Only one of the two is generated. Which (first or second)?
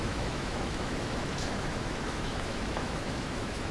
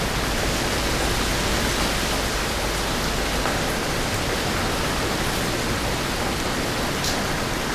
first